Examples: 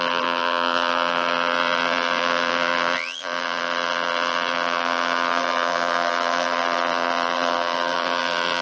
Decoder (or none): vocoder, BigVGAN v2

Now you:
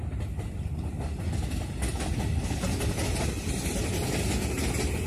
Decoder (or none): none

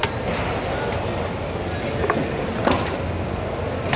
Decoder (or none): none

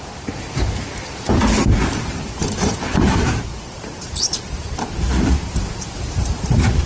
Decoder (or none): vocoder, BigVGAN v2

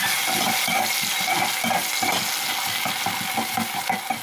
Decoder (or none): none